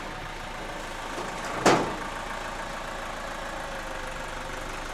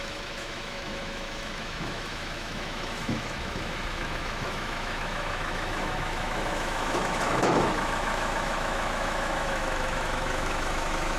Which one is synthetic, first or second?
second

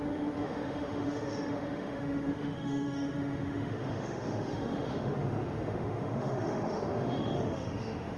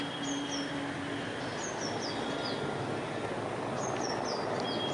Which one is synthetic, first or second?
first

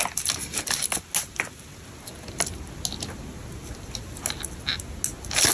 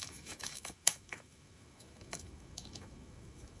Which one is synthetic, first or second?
second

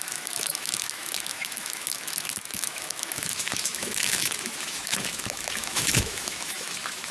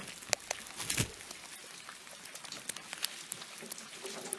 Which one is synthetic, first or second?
first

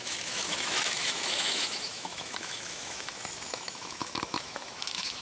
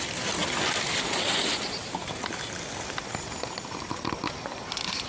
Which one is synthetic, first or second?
first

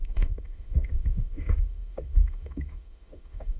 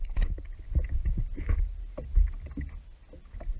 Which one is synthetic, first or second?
first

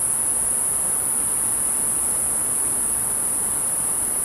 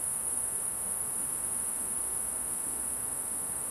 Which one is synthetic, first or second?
second